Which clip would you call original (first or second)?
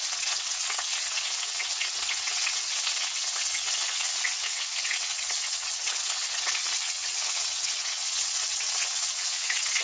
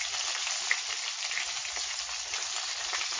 second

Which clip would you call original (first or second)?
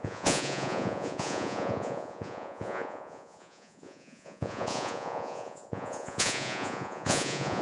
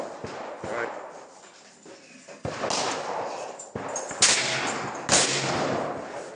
second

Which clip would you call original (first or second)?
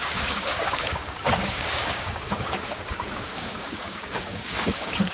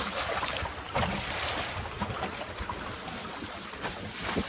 second